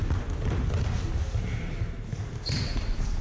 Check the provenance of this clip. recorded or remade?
recorded